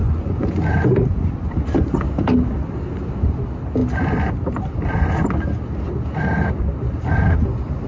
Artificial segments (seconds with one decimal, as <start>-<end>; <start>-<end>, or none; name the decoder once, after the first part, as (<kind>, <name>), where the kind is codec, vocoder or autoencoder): 0.0-0.6 (vocoder, Vocos)